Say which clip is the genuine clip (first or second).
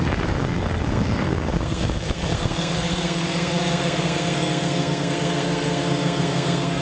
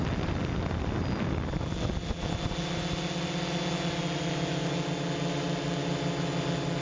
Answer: second